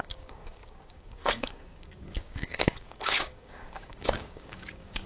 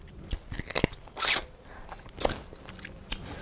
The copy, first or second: first